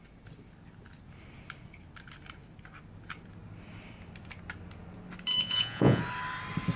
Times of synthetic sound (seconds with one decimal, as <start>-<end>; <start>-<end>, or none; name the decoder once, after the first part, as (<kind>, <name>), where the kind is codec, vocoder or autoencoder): 5.3-6.0 (vocoder, Vocos)